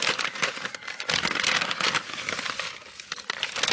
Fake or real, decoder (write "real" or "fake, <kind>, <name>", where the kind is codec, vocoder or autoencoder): real